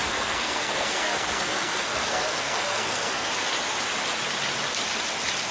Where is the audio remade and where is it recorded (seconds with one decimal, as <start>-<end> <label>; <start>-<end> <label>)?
0.0-3.3 remade; 3.3-5.5 recorded